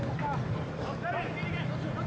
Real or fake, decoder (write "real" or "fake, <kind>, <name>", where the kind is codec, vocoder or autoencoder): real